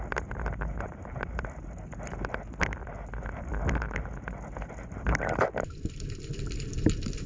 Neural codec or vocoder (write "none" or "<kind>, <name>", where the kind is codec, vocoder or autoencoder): none